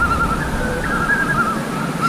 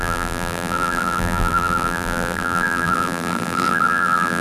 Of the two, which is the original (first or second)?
first